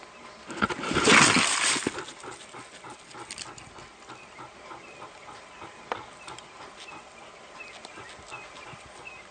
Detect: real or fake real